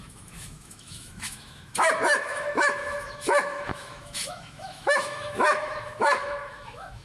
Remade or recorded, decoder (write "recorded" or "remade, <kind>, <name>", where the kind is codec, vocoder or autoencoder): remade, autoencoder, DAC-VAE